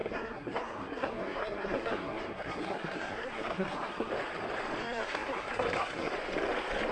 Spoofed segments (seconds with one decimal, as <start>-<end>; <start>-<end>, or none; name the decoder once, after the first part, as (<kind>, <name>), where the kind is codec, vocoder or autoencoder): 0.0-4.1 (codec, SNAC); 4.8-6.1